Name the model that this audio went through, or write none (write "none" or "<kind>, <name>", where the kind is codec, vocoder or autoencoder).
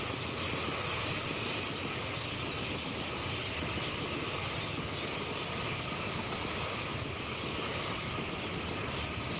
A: none